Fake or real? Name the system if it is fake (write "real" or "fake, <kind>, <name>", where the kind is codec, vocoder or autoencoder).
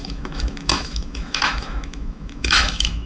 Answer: fake, autoencoder, DAC-VAE